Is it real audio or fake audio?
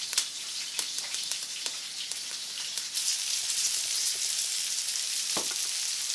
fake